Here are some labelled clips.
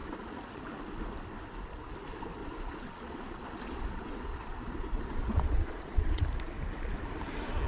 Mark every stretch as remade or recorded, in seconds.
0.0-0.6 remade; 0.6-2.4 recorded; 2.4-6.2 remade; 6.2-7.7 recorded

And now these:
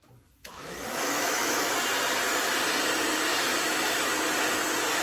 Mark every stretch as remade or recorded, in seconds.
0.0-0.4 recorded; 0.4-1.7 remade; 1.7-3.3 recorded; 3.3-4.1 remade; 4.1-5.0 recorded

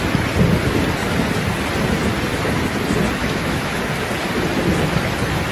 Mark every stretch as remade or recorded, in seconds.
0.0-3.2 recorded; 3.2-3.8 remade; 3.8-5.5 recorded

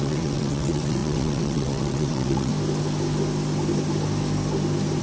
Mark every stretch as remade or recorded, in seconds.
0.0-2.5 remade; 2.5-5.0 recorded

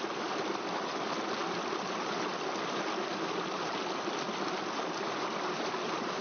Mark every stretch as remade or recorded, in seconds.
0.0-6.2 recorded